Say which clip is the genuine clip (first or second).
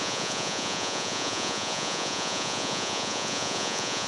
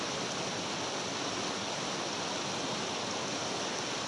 second